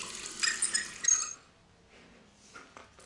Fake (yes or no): no